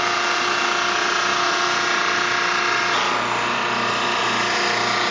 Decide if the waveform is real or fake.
real